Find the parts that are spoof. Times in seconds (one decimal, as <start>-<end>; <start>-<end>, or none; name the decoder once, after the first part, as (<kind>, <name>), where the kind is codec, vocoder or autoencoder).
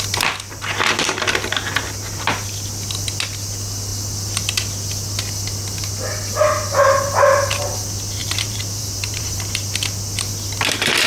8.2-9.2 (vocoder, BigVGAN v2)